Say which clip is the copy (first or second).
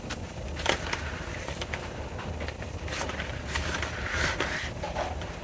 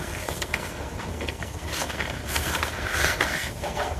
second